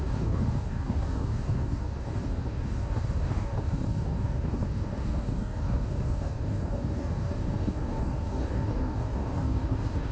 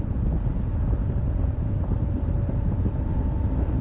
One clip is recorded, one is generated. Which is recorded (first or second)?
second